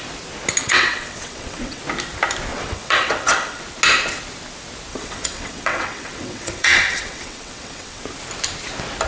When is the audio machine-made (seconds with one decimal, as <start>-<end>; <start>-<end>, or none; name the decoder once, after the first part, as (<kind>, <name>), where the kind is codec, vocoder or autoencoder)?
0.6-1.8 (vocoder, WaveNeXt); 2.5-3.6; 4.9-8.0